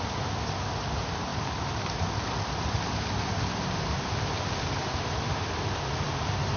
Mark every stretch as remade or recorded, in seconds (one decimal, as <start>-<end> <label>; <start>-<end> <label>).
0.0-6.6 recorded